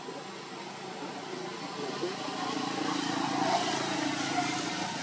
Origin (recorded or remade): recorded